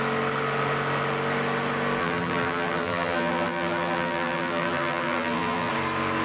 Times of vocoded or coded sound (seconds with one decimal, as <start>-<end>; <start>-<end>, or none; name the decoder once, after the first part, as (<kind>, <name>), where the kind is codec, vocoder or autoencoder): 2.0-5.7 (vocoder, BigVGAN v2)